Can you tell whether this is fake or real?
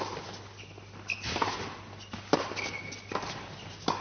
real